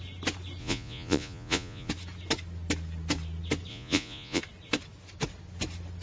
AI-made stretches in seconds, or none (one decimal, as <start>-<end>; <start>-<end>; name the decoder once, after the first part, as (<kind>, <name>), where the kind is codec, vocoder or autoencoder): 0.6-1.9 (vocoder, Vocos); 3.7-4.4